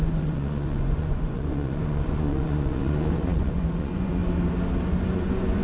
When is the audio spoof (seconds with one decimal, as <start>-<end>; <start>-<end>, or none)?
0.0-4.2; 5.1-5.6